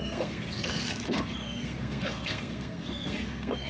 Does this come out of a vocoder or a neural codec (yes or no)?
yes